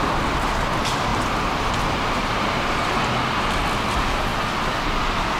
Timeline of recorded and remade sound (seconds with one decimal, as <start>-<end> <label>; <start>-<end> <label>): 0.0-1.1 recorded; 1.1-2.9 remade; 2.9-5.4 recorded